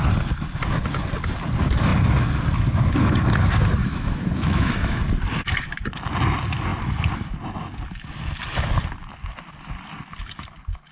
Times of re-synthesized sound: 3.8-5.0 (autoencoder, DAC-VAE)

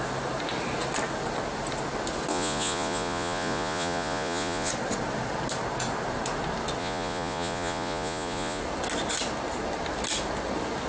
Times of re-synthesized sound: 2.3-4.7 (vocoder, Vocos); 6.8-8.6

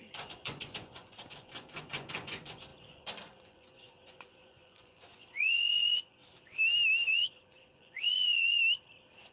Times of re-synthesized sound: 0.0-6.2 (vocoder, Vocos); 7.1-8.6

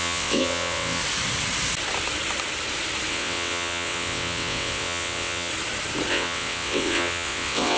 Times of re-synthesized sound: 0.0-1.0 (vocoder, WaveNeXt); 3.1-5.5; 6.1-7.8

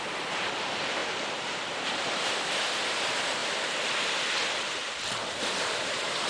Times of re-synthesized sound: 0.0-1.0 (vocoder, BigVGAN v2); 1.5-3.4; 5.3-6.3

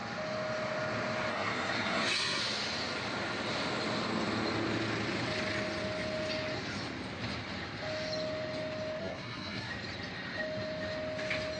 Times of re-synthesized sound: 1.3-2.4 (codec, SNAC); 9.0-9.7

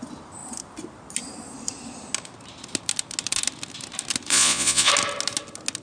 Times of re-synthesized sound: 4.3-4.9 (vocoder, Vocos)